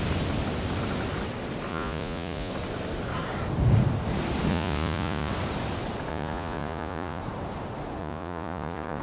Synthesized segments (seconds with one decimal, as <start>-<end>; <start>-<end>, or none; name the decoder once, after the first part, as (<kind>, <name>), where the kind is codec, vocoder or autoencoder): 1.7-2.5 (vocoder, Vocos); 4.5-5.3; 6.1-7.2; 8.0-9.0